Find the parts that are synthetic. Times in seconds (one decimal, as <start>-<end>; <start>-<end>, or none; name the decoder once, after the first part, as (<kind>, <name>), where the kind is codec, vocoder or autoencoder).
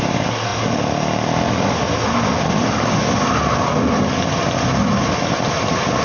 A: none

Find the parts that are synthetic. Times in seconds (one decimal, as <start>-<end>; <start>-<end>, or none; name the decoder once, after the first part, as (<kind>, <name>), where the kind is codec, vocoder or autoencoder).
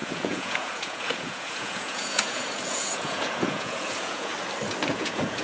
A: 0.0-4.3 (vocoder, Vocos); 4.9-5.4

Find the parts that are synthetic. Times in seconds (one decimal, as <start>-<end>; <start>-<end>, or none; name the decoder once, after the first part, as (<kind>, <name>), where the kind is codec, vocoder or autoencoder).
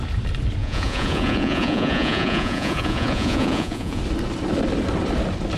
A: 0.6-4.0 (vocoder, Vocos)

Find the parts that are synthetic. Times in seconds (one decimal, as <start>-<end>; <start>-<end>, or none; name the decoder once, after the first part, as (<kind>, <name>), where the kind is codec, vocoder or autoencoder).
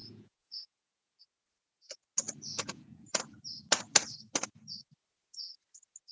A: 0.0-1.2 (vocoder, Vocos); 2.5-3.2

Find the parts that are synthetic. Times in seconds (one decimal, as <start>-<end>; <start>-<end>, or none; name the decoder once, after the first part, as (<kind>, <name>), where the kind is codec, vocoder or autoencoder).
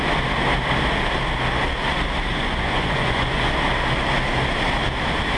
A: 2.3-3.5 (vocoder, Vocos)